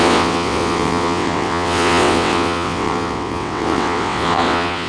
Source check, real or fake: fake